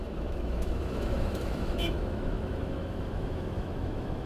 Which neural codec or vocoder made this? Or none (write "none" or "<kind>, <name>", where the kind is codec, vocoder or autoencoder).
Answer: autoencoder, DAC-VAE